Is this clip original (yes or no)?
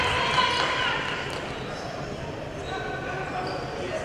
yes